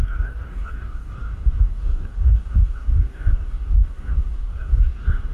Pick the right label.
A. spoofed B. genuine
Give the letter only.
A